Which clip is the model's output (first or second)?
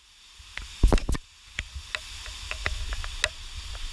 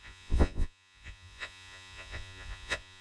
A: second